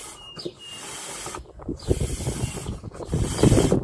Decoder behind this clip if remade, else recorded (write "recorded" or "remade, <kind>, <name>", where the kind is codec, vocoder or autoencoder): recorded